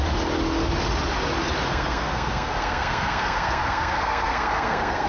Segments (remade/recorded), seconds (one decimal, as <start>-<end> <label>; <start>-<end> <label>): 0.0-1.7 recorded; 1.7-5.1 remade